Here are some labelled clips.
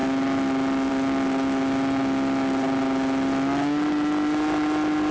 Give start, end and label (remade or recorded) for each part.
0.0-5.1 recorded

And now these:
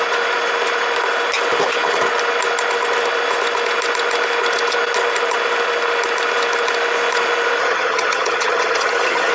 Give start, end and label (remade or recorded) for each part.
0.0-7.6 recorded; 7.6-9.3 remade